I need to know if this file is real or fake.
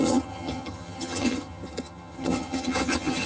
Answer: fake